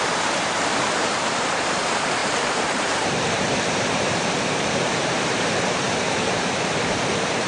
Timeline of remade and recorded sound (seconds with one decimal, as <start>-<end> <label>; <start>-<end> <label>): 0.0-7.5 remade